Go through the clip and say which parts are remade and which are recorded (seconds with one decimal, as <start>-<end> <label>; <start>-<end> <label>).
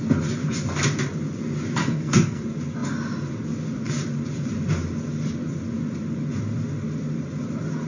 0.0-1.8 recorded; 1.8-2.4 remade; 2.4-7.9 recorded